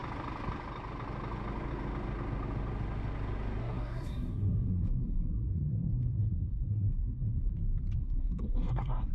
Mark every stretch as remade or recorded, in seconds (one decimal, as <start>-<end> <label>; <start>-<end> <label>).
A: 0.0-3.6 recorded; 3.6-7.5 remade; 7.5-8.0 recorded; 8.0-9.1 remade